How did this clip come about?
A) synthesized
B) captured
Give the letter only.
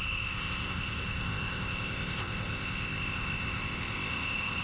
A